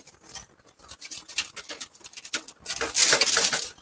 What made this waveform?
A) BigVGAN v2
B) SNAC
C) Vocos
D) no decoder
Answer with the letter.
D